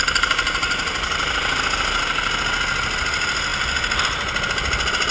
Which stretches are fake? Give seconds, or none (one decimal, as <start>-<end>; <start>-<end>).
none

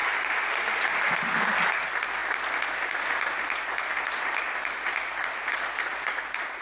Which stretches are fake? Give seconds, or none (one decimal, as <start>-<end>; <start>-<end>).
none

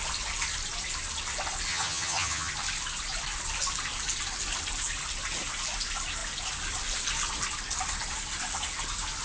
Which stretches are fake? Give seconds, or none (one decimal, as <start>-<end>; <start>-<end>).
1.7-2.5